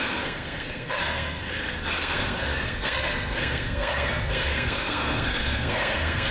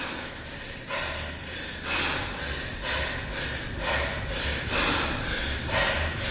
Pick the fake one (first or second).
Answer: first